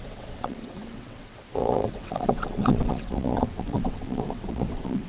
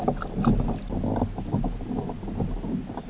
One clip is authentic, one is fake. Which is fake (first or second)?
first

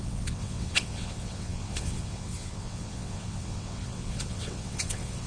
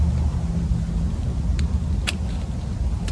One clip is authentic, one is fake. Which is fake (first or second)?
first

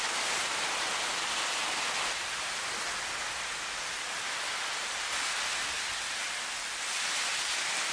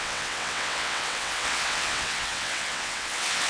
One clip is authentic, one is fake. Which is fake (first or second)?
second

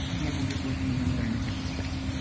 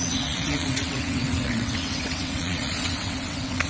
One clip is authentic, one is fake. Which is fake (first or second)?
second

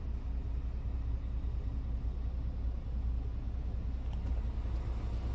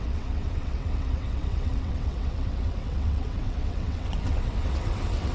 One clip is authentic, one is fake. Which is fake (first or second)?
second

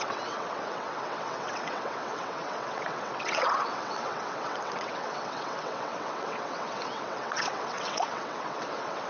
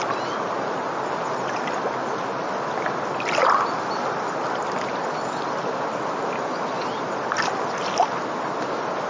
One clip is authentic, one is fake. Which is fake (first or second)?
first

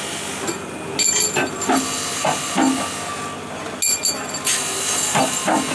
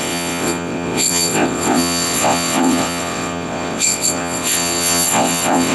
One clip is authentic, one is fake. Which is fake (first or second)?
second